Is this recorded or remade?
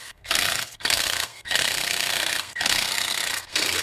remade